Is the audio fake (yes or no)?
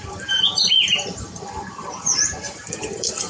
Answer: yes